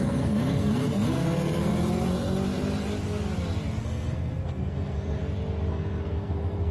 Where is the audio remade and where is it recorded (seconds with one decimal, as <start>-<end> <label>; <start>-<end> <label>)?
0.0-1.7 remade; 1.7-3.8 recorded; 3.8-5.2 remade; 5.2-5.7 recorded; 5.7-6.7 remade